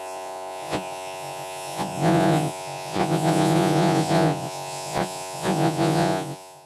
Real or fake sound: fake